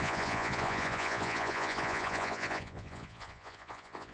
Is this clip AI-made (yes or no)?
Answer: yes